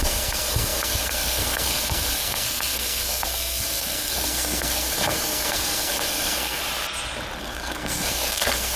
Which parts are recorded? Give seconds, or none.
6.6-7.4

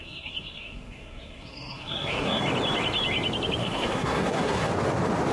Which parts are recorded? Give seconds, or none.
2.4-3.6; 4.7-5.3

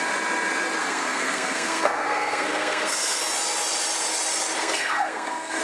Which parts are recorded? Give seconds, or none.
0.0-0.8; 3.2-4.6

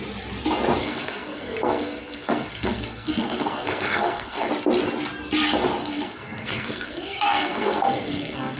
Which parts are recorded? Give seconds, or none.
0.0-0.8; 4.5-5.8